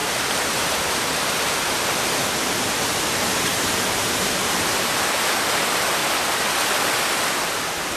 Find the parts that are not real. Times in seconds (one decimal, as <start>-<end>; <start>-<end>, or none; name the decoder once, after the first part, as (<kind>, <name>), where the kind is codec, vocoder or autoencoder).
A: 0.0-1.8 (vocoder, BigVGAN v2); 3.5-4.9